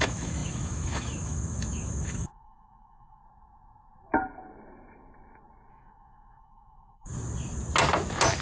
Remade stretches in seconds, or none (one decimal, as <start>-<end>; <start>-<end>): 0.0-3.2; 5.7-7.1